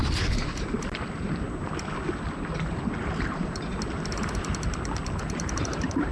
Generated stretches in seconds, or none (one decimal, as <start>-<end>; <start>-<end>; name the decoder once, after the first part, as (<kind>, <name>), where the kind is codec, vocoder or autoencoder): 3.0-3.7 (vocoder, BigVGAN v2); 5.2-6.1